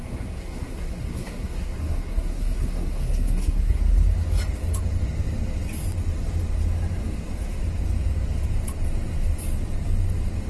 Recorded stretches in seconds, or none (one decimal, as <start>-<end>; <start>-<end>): 3.8-10.5